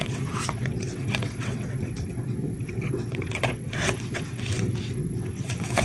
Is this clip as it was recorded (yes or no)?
no